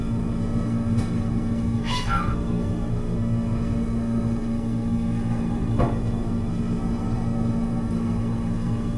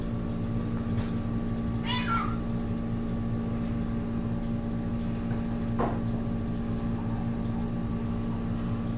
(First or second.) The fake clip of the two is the first